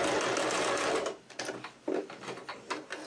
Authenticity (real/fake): real